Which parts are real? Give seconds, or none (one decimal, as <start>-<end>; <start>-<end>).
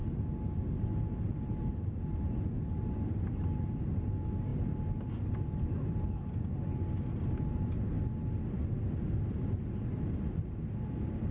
0.0-11.3